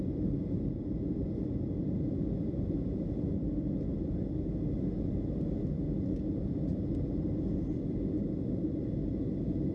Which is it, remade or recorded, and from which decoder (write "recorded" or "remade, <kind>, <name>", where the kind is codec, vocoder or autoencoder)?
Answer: recorded